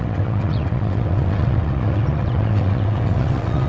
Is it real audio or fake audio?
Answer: fake